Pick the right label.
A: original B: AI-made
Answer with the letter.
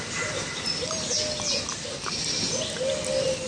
A